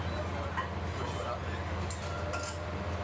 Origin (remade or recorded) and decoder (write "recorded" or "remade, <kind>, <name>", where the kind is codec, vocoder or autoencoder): recorded